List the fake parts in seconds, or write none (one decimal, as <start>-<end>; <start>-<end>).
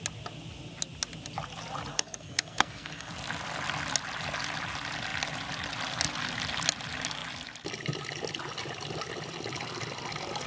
1.9-3.1